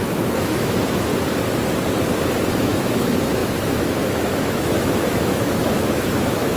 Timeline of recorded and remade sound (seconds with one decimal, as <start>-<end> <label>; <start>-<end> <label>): 0.0-1.1 remade; 1.1-2.6 recorded; 2.6-6.6 remade